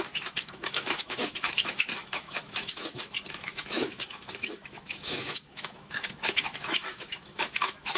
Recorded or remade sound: remade